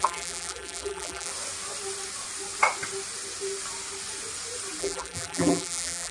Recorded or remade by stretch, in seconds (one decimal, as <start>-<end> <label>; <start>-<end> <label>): 0.0-1.3 remade; 1.3-4.8 recorded; 4.8-6.1 remade

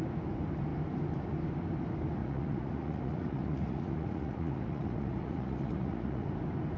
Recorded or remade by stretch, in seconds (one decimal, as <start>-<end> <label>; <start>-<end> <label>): 0.0-2.2 recorded; 2.2-6.3 remade; 6.3-6.8 recorded

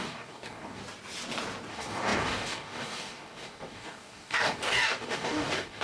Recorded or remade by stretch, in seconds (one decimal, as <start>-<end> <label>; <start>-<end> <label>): 0.0-0.8 remade; 0.8-1.7 recorded; 1.7-5.8 remade